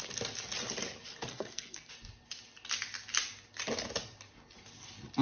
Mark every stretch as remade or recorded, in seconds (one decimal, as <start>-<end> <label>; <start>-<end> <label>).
0.0-1.3 recorded; 1.3-1.9 remade; 1.9-5.2 recorded